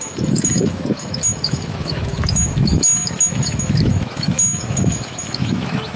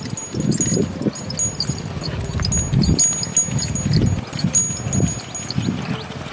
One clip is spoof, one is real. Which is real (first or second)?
second